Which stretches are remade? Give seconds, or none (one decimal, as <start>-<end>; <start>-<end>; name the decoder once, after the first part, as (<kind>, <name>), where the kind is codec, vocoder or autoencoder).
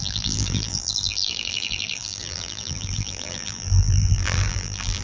0.0-5.0 (vocoder, BigVGAN v2)